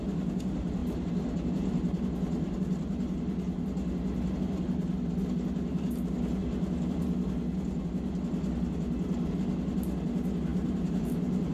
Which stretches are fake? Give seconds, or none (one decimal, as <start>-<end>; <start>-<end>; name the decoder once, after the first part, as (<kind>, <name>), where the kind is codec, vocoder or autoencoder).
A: 10.5-11.5 (vocoder, BigVGAN v2)